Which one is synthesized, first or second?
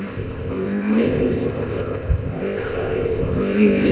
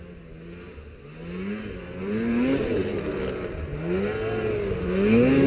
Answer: first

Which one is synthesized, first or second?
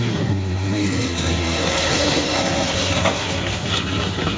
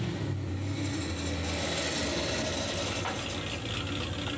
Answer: first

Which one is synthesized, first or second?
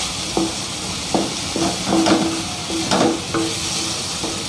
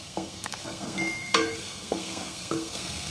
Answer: second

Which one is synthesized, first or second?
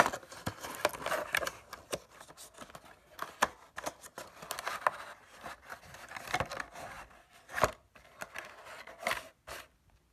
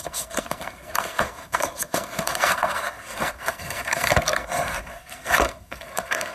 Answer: second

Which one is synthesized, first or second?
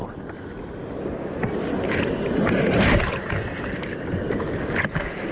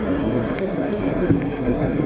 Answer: second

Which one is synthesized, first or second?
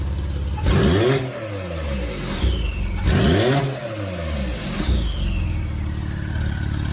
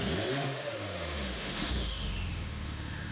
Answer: second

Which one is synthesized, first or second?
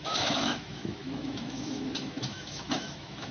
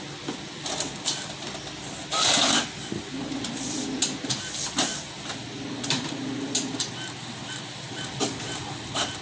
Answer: first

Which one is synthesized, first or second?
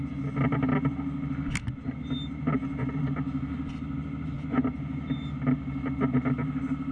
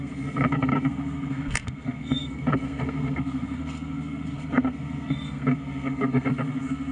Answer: second